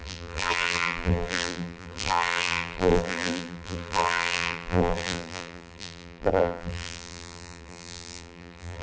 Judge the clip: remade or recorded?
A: remade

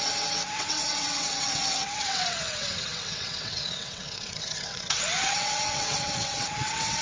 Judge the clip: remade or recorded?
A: remade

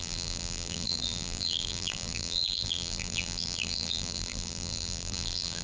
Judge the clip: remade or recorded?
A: remade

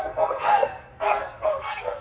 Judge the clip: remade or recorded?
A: remade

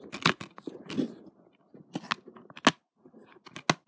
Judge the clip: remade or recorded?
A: recorded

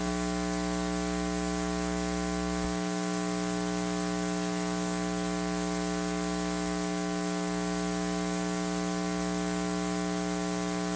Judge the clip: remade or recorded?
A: recorded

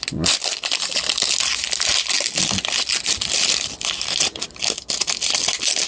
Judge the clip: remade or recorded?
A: recorded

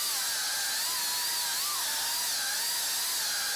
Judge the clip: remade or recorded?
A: recorded